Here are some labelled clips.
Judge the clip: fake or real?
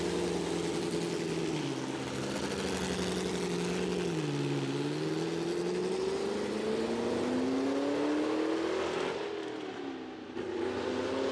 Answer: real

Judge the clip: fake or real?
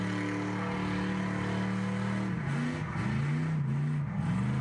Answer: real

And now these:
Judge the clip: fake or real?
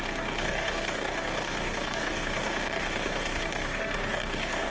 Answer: fake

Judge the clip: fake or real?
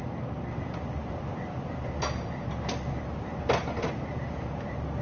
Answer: real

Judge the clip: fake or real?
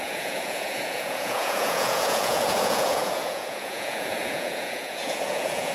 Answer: fake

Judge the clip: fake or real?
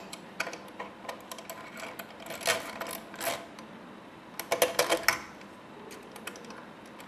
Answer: real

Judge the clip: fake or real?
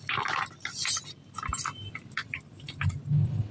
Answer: real